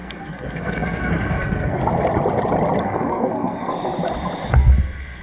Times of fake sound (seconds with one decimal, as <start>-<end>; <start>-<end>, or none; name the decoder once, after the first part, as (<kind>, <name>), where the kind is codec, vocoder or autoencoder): 0.0-1.8 (codec, SNAC); 2.8-3.7; 4.5-5.2